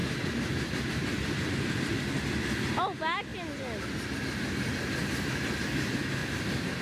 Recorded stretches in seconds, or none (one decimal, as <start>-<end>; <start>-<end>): 1.8-6.2